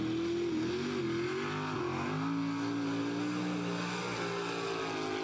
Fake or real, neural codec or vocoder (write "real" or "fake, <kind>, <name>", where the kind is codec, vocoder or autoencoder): real